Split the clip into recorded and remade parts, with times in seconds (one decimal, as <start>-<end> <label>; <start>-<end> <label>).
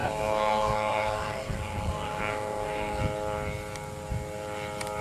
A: 0.0-3.0 remade; 3.0-5.0 recorded